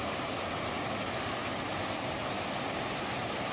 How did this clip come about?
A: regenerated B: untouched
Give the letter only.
B